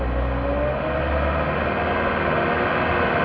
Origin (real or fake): real